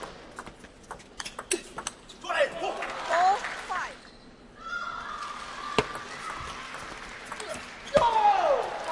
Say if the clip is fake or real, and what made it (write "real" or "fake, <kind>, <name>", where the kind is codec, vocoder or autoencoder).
real